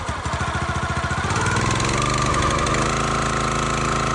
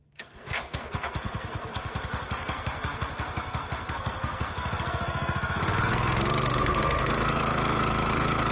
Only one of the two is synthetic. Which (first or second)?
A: second